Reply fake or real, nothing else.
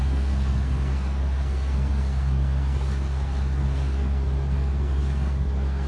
fake